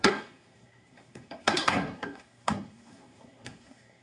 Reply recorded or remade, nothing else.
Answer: remade